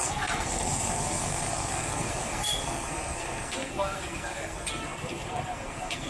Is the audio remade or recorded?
remade